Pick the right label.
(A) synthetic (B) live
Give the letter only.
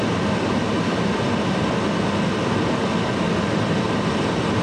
B